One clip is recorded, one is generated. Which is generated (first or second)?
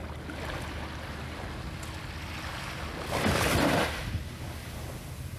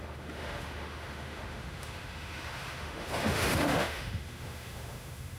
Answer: second